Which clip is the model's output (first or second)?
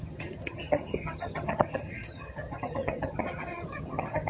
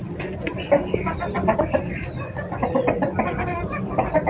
first